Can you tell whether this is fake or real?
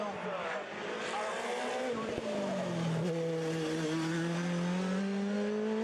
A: real